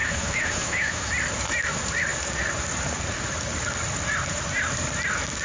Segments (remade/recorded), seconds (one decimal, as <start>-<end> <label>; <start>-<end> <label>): 0.0-1.1 remade; 1.1-5.4 recorded